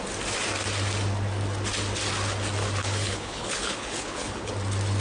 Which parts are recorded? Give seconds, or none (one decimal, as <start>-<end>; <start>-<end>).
0.0-2.8; 4.5-5.0